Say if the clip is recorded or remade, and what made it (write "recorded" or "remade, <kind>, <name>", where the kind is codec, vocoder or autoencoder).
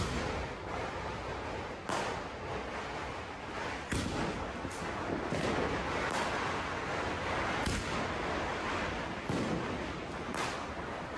recorded